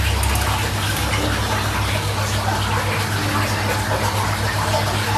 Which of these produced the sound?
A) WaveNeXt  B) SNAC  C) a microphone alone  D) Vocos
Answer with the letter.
C